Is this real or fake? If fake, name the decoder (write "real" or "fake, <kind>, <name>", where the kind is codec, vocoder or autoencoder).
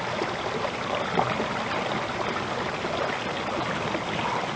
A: real